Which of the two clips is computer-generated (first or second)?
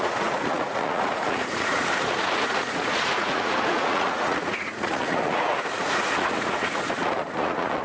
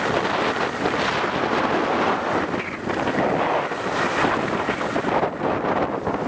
first